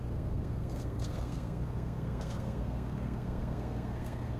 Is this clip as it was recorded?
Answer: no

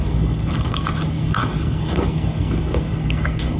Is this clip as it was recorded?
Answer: no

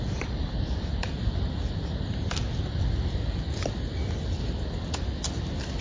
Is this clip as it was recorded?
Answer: yes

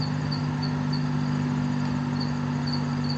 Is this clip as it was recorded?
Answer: yes